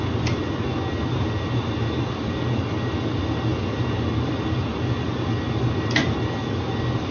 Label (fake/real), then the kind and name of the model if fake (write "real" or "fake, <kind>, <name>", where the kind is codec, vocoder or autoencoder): real